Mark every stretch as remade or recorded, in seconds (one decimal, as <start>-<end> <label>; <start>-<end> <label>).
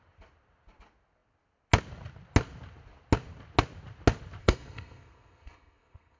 0.0-4.4 recorded; 4.4-6.2 remade